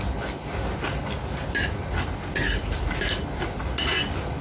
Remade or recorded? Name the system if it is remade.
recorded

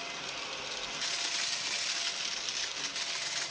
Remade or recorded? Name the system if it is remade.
recorded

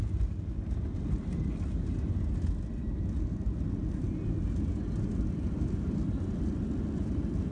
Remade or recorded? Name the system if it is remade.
recorded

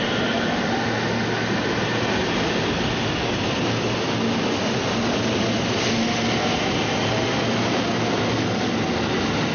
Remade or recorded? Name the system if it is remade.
recorded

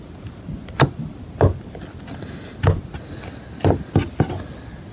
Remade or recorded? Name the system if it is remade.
recorded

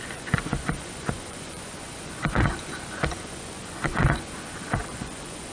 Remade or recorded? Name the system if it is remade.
remade, vocoder, Vocos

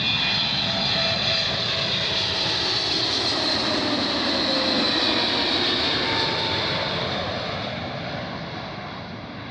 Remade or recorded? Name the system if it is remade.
recorded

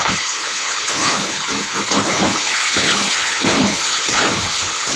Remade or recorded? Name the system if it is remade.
remade, codec, HILCodec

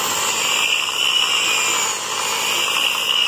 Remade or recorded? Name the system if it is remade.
recorded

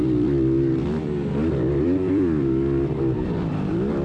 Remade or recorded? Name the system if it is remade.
remade, vocoder, BigVGAN v2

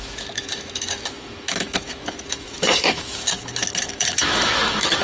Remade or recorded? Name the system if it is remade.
remade, autoencoder, DAC-VAE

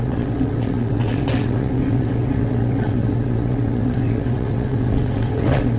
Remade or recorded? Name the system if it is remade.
remade, vocoder, WaveNeXt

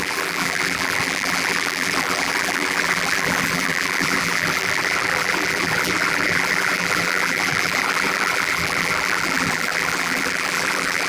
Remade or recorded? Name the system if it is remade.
remade, vocoder, BigVGAN v2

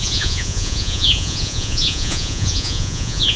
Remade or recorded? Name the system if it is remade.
remade, vocoder, Vocos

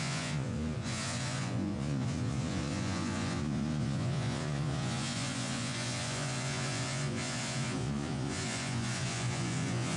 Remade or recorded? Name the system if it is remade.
remade, vocoder, Vocos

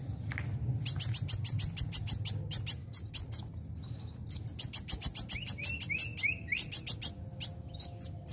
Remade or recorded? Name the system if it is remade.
recorded